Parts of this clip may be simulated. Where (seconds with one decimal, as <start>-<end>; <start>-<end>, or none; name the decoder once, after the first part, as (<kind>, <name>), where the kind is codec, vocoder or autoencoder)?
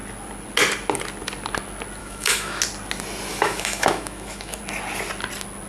2.0-2.6 (autoencoder, DAC-VAE); 3.3-4.6